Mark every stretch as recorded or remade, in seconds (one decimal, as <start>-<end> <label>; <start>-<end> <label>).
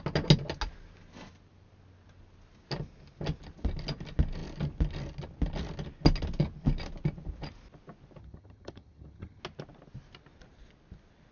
0.0-8.2 recorded; 8.2-9.4 remade; 9.4-11.3 recorded